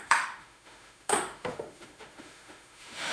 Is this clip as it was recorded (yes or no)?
no